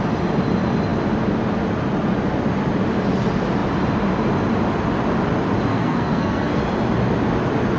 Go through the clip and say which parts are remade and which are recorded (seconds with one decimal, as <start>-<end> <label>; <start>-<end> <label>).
0.0-5.7 recorded; 5.7-6.6 remade; 6.6-7.8 recorded